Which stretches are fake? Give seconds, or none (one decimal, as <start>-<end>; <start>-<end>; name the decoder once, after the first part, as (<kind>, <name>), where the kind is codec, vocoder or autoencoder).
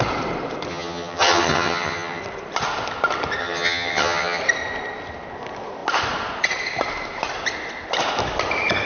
0.7-2.2 (vocoder, HiFi-GAN); 3.4-4.4